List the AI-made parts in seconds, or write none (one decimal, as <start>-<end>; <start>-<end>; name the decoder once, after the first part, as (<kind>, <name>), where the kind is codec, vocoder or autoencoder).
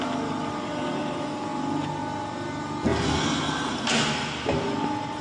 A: none